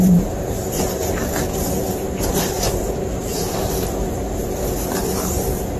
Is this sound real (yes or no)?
no